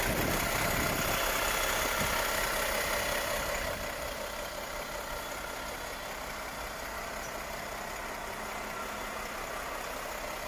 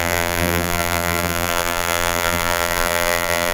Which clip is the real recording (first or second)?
first